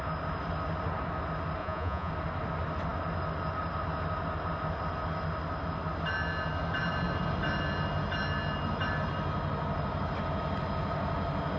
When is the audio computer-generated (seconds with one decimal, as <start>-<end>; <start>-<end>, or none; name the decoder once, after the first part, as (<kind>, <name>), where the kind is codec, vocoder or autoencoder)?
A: 1.6-2.1 (vocoder, Vocos)